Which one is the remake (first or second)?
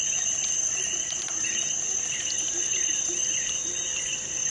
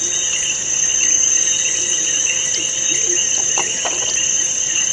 first